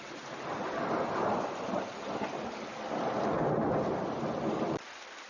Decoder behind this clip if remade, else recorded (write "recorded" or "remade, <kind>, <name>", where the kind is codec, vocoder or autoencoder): recorded